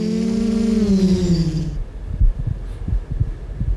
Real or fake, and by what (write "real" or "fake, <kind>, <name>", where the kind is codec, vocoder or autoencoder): real